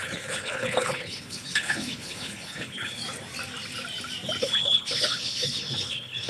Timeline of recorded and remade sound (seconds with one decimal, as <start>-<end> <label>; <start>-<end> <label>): 0.0-3.0 remade; 3.0-4.4 recorded; 4.4-6.3 remade